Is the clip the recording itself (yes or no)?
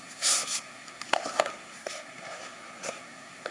no